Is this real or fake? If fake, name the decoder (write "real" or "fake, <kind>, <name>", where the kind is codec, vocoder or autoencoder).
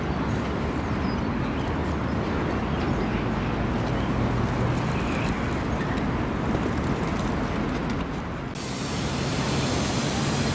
real